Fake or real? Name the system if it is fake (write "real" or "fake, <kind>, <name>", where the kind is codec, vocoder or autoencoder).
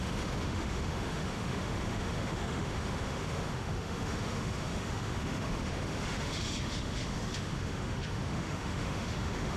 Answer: fake, autoencoder, DAC-VAE